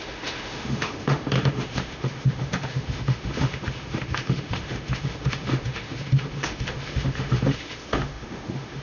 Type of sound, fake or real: fake